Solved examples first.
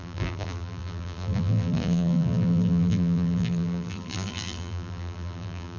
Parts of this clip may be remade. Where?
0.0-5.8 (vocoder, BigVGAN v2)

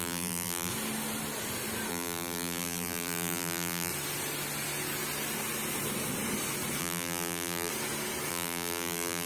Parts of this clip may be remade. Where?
0.0-0.7 (vocoder, BigVGAN v2); 1.9-3.9; 6.8-7.7; 8.3-9.3

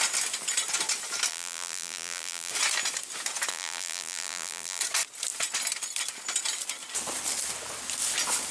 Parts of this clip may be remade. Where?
1.3-2.5 (vocoder, BigVGAN v2); 3.5-4.8